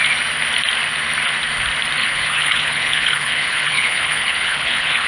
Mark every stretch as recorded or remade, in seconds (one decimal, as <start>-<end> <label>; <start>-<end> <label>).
0.0-2.0 recorded; 2.0-5.1 remade